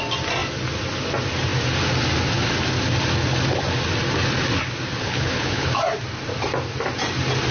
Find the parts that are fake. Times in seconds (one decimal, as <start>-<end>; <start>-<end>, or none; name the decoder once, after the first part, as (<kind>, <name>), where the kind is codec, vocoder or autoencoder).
5.0-5.7 (codec, HILCodec)